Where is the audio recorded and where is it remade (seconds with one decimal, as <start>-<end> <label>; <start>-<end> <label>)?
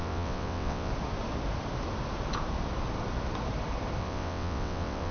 0.0-0.9 remade; 0.9-4.0 recorded; 4.0-5.1 remade